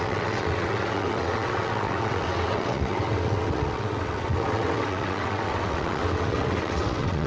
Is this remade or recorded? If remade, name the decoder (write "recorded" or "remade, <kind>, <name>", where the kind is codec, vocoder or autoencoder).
remade, vocoder, WaveNeXt